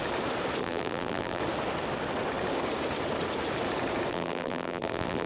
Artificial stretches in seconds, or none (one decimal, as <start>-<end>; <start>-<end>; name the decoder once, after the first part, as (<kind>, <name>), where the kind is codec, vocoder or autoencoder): 0.6-1.4 (vocoder, BigVGAN v2); 4.1-5.3